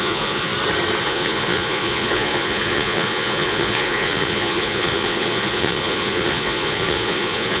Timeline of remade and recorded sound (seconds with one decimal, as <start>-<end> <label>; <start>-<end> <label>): 0.0-0.5 remade; 0.5-1.0 recorded; 1.0-7.6 remade